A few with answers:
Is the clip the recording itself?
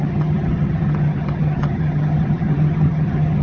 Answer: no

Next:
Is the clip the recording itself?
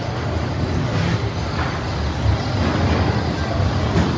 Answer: yes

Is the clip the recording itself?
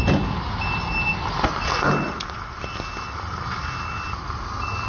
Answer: yes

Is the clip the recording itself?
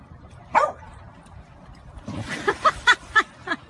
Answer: no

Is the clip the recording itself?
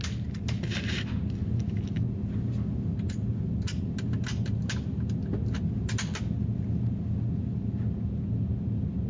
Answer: yes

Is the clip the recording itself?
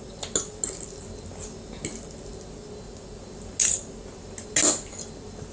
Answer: yes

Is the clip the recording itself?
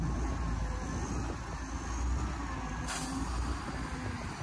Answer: yes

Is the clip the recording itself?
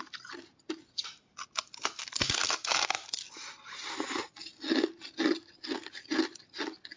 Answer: yes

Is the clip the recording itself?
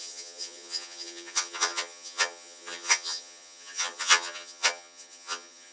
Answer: no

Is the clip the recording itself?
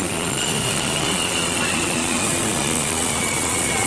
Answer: no